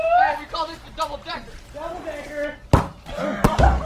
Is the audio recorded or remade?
recorded